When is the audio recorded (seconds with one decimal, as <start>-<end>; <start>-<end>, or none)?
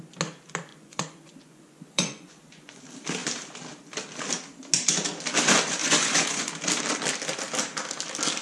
0.0-0.7; 2.8-5.8; 6.5-8.4